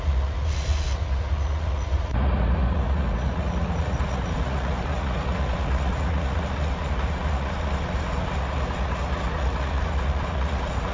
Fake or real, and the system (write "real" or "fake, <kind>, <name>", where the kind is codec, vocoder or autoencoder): fake, vocoder, Vocos